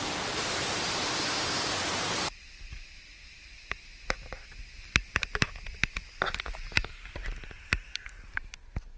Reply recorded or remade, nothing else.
recorded